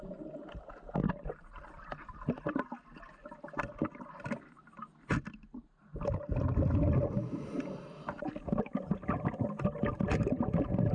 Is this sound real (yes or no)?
yes